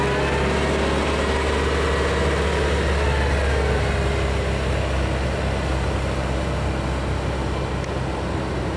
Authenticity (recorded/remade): recorded